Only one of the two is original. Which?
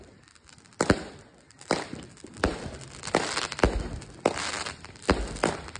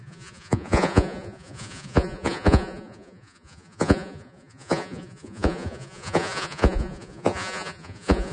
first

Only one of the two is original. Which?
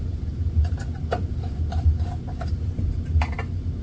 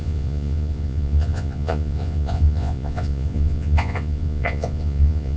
first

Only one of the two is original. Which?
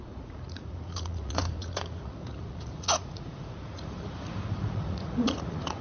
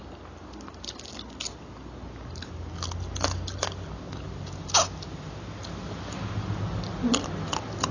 second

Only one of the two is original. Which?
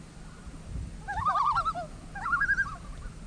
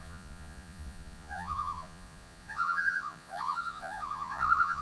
first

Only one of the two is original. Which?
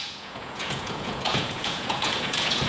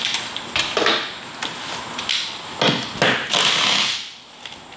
second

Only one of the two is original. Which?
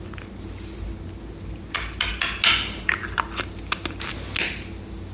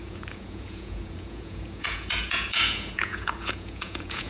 first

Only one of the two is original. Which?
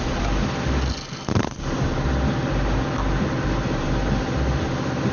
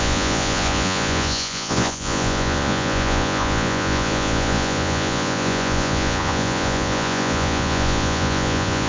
first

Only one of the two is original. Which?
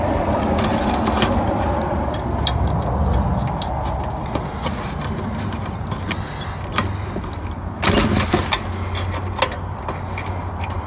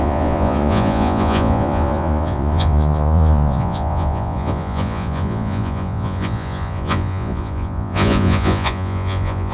first